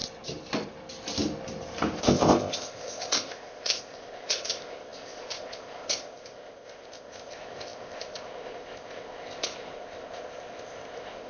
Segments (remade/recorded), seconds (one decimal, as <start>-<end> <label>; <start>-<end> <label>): 0.0-2.0 recorded; 2.0-11.3 remade